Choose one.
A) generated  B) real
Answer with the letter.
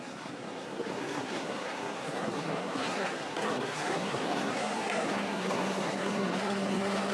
A